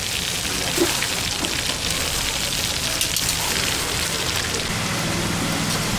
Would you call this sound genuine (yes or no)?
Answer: yes